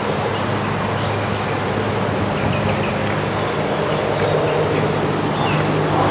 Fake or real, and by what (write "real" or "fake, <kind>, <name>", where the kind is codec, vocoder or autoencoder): real